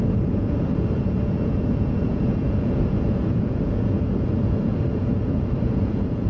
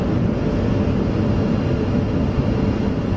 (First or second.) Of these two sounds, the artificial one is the first